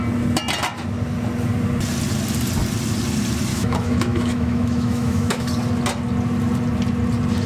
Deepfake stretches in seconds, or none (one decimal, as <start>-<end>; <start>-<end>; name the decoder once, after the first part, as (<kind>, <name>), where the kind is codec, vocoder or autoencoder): 3.5-5.5 (autoencoder, DAC-VAE)